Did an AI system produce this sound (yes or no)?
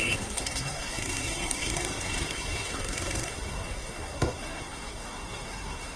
yes